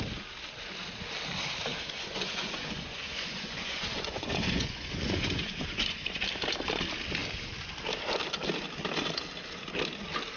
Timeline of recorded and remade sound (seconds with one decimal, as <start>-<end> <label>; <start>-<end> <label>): 0.0-1.7 recorded; 1.7-6.2 remade; 6.2-10.4 recorded